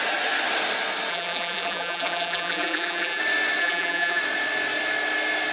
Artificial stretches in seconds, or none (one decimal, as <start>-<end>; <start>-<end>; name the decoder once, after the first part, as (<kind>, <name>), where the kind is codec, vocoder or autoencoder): 1.1-3.2 (vocoder, BigVGAN v2); 3.6-4.2